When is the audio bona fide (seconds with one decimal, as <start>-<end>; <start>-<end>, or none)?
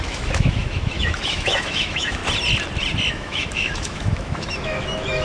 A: 2.2-3.1